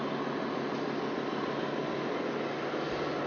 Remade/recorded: recorded